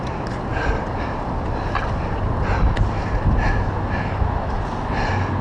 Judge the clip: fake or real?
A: real